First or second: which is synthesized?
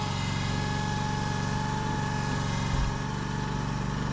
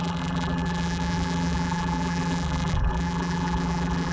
second